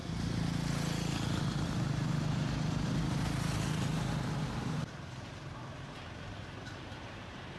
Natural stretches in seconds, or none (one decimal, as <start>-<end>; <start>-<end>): 0.0-4.6

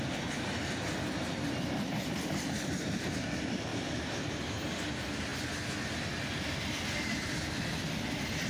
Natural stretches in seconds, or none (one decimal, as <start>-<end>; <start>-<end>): 3.7-4.3; 5.3-8.5